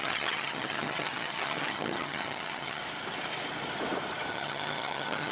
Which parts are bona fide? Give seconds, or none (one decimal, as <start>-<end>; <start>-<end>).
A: 2.8-4.3

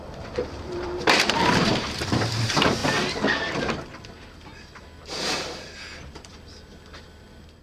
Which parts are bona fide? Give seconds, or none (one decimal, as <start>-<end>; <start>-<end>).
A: 2.8-7.6

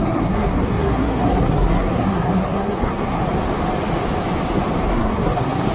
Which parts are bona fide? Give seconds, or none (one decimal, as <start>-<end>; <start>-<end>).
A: 3.2-4.9

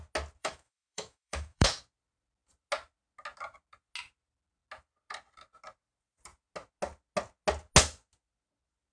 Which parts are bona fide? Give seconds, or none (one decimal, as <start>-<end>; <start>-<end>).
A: 0.0-0.4; 1.8-8.9

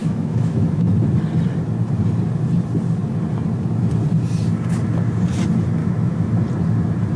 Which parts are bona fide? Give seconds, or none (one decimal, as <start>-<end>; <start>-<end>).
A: 0.9-5.8; 6.3-7.2

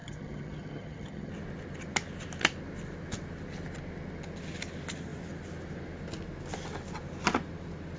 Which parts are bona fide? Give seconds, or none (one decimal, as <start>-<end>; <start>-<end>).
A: 1.3-8.0

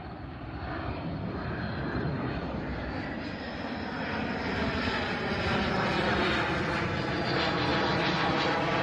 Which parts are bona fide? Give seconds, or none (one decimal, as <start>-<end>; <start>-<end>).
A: 0.0-8.8

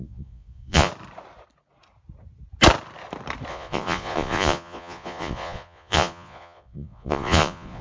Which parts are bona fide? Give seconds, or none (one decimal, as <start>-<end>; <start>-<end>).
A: 0.9-3.5